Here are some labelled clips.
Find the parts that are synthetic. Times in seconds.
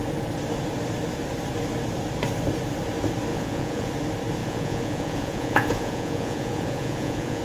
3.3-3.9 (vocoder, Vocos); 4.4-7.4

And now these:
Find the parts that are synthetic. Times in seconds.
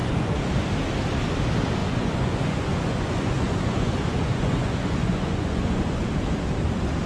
0.0-0.5 (vocoder, Vocos); 1.8-6.1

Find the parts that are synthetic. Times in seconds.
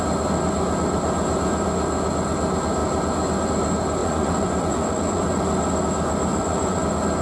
4.0-5.4 (vocoder, Vocos); 6.3-6.8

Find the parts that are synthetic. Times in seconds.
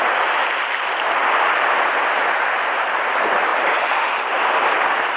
none